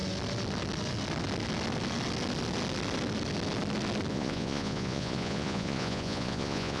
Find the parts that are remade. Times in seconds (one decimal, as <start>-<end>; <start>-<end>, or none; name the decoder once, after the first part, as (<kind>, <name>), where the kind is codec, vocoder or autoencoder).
4.1-6.8 (vocoder, Vocos)